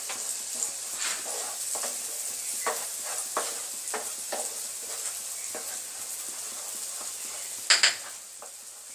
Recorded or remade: recorded